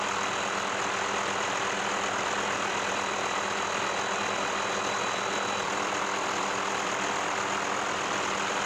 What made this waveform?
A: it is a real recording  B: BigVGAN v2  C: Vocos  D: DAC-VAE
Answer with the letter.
A